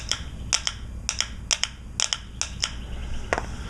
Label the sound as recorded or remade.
recorded